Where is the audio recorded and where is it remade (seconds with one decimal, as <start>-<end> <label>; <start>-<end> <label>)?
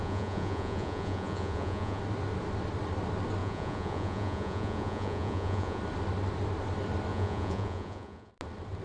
0.0-2.0 remade; 2.0-3.4 recorded; 3.4-5.8 remade; 5.8-7.1 recorded; 7.1-8.3 remade; 8.3-8.8 recorded